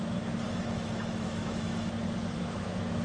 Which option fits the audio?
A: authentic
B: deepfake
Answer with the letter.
B